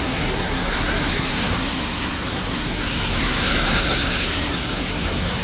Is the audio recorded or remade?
remade